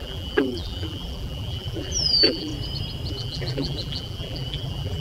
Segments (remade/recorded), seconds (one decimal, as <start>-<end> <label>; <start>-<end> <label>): 0.0-2.5 remade; 2.5-3.1 recorded; 3.1-5.0 remade

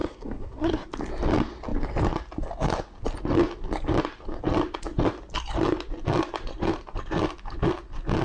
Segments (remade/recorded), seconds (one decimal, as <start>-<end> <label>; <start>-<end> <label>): 0.0-0.9 remade; 0.9-8.2 recorded